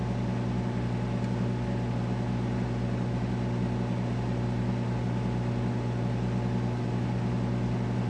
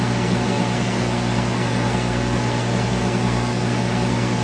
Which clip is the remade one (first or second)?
second